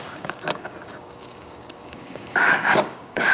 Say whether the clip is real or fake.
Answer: fake